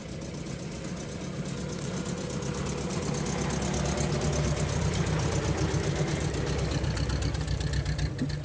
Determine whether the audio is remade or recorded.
recorded